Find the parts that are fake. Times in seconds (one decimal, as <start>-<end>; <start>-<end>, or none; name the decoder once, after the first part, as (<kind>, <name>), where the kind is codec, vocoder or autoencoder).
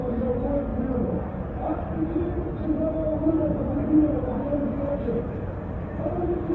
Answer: 1.7-2.6 (vocoder, BigVGAN v2)